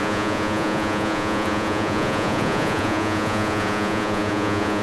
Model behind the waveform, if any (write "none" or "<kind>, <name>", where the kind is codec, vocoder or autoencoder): vocoder, Vocos